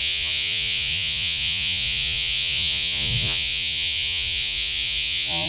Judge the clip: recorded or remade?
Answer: remade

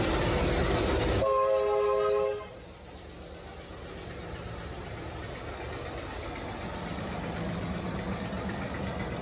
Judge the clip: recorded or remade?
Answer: recorded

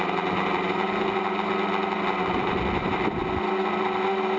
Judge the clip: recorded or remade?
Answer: recorded